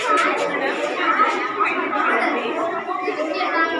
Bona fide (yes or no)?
yes